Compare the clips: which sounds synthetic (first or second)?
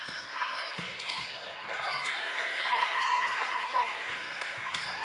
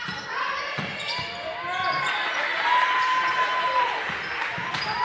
first